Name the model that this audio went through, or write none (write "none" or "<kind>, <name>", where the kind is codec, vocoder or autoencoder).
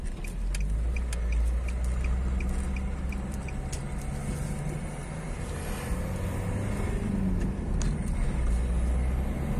none